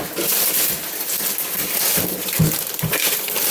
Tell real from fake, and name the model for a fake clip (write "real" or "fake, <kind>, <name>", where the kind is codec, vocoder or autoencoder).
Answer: real